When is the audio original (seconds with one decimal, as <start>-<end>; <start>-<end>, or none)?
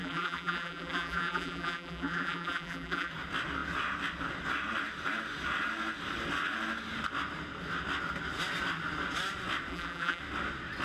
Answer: 3.1-9.7; 10.2-10.8